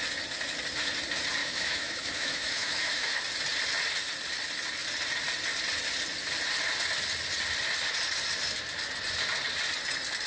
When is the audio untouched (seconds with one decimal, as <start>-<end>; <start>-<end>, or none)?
0.0-1.4; 3.2-10.3